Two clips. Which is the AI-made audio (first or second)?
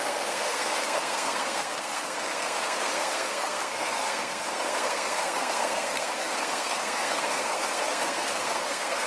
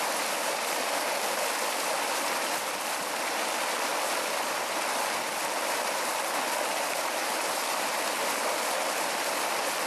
first